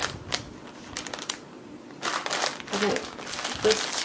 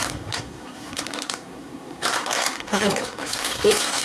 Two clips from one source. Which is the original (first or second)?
first